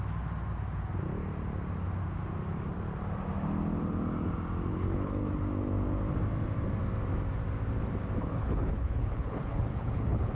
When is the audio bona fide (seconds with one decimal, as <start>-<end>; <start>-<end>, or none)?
0.0-4.7; 5.3-8.2